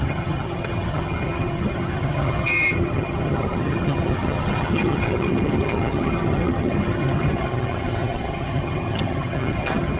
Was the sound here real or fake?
fake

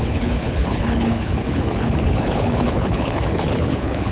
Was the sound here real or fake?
fake